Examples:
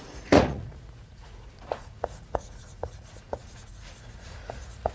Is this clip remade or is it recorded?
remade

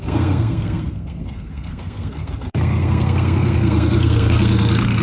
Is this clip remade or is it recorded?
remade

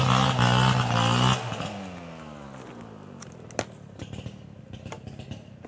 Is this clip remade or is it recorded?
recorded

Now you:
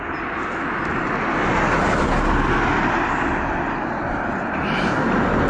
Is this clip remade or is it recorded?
recorded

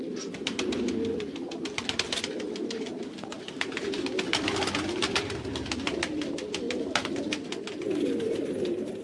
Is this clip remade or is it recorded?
recorded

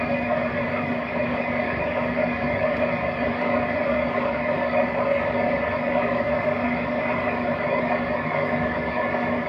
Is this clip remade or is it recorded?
remade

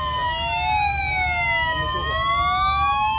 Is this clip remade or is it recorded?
recorded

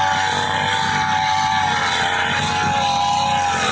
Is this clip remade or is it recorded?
recorded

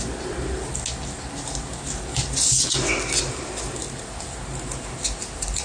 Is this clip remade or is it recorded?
recorded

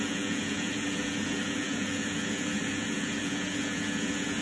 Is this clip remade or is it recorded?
remade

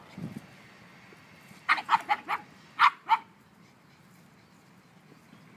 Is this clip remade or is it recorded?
recorded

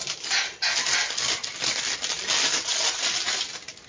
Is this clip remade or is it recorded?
recorded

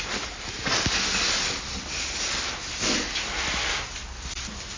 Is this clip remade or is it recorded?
recorded